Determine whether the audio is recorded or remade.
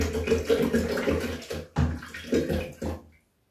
recorded